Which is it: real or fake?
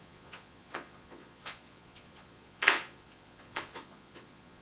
fake